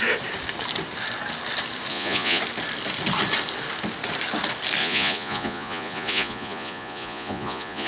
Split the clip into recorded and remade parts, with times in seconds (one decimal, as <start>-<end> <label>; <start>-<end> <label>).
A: 0.0-1.9 recorded; 1.9-2.4 remade; 2.4-4.8 recorded; 4.8-7.9 remade